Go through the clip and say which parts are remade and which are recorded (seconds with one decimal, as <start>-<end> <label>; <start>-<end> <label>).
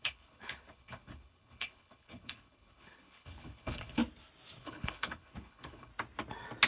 0.0-4.0 remade; 4.0-4.6 recorded; 4.6-5.9 remade; 5.9-6.7 recorded